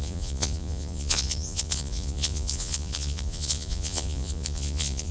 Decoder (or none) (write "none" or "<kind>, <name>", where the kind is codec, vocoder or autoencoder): vocoder, Vocos